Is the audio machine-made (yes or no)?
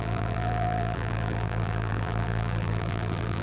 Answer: yes